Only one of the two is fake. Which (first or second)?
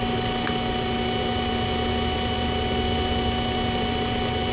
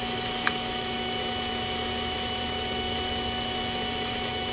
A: second